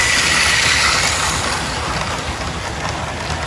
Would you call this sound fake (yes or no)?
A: no